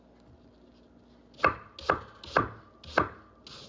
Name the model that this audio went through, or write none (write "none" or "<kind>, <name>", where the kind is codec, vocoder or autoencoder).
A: none